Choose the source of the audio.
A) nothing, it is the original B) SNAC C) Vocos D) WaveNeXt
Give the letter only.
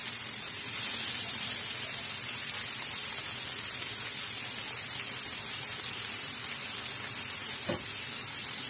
A